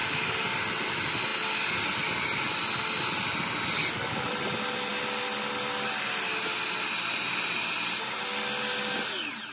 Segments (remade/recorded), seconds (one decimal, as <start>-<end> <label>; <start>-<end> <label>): 0.0-9.5 recorded